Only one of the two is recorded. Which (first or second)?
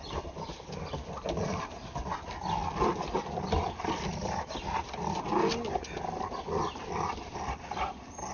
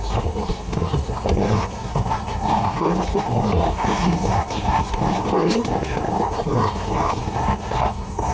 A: first